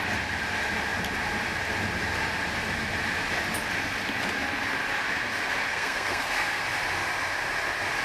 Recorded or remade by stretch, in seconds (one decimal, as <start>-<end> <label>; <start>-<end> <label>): 0.0-5.7 recorded; 5.7-6.6 remade; 6.6-8.0 recorded